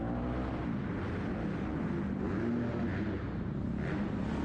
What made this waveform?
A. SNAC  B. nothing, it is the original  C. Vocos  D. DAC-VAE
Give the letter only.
B